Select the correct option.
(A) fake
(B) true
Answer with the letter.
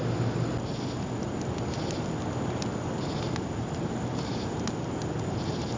B